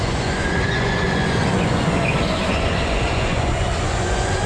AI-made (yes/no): yes